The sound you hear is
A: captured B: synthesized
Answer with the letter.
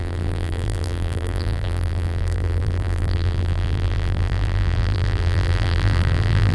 B